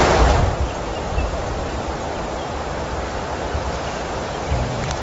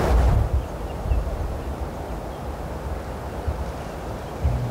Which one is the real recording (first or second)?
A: second